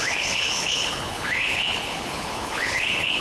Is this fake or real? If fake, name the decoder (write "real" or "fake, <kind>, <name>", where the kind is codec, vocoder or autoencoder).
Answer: fake, codec, HILCodec